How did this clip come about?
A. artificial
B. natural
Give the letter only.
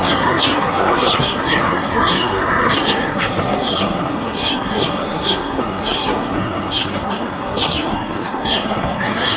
A